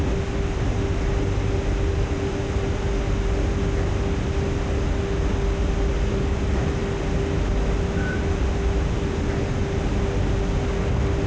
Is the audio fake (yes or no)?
no